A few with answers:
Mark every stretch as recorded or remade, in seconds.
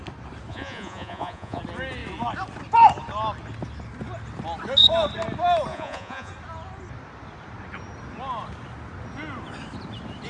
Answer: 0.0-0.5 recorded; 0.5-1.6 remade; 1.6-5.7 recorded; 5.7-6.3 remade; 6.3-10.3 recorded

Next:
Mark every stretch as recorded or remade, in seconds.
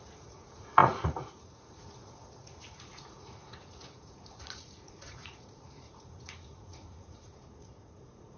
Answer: 0.0-8.4 remade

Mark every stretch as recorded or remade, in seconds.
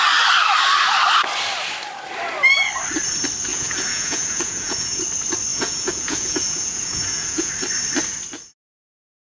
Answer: 0.0-3.5 recorded; 3.5-5.0 remade; 5.0-5.5 recorded; 5.5-7.5 remade; 7.5-9.2 recorded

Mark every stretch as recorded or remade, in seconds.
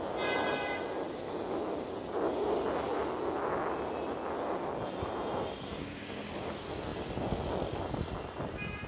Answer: 0.0-8.9 recorded